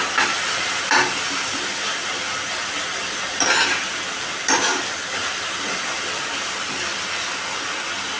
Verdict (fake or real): real